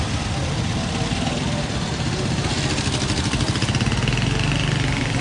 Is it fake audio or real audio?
real